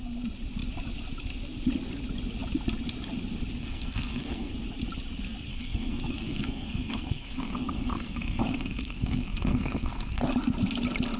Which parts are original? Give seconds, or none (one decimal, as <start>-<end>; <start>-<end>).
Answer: 0.0-3.6; 4.5-5.5; 10.3-11.2